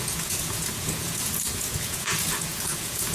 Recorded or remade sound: remade